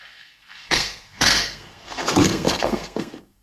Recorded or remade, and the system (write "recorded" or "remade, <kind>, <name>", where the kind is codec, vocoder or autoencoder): remade, codec, SNAC